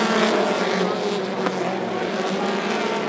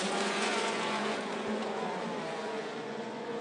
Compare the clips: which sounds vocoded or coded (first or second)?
second